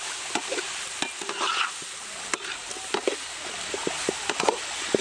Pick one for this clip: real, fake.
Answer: real